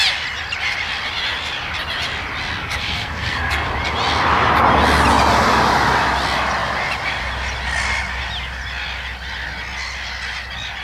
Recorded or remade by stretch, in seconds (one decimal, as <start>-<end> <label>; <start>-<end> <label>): 0.0-2.6 recorded; 2.6-3.7 remade; 3.7-10.8 recorded